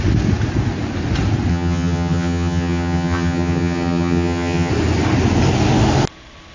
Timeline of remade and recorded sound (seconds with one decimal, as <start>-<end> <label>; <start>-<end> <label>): 0.0-1.5 recorded; 1.5-4.7 remade; 4.7-6.5 recorded